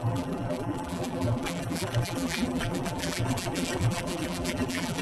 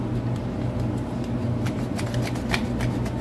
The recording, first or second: second